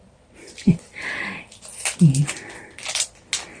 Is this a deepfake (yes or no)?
no